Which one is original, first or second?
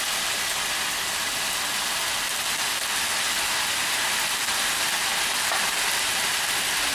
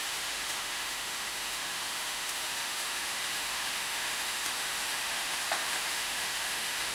first